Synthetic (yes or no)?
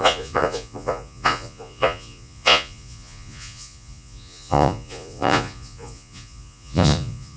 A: yes